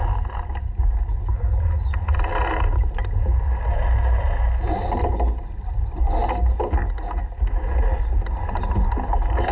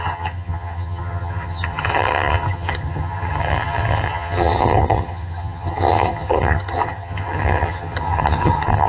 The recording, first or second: first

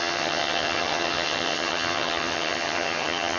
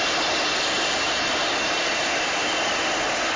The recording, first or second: second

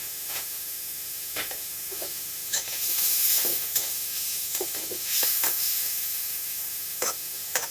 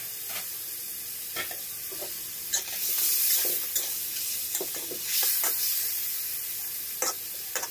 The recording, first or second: second